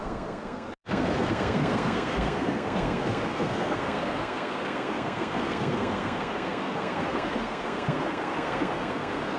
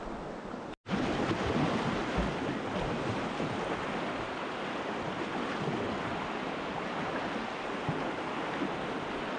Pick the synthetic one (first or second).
first